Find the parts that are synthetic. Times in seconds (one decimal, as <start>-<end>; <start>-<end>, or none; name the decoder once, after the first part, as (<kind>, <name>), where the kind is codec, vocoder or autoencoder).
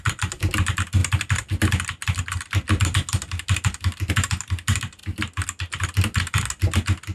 none